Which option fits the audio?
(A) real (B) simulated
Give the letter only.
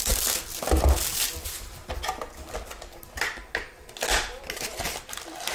A